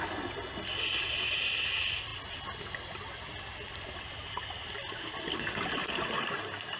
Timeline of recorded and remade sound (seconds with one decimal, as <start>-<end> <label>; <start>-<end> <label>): 0.0-5.8 recorded; 5.8-6.8 remade